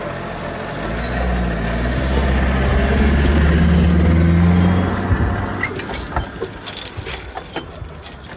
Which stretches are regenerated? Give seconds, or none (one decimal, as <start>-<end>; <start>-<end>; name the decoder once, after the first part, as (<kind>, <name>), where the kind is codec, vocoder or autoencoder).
none